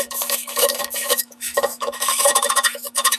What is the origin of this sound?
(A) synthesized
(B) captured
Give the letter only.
A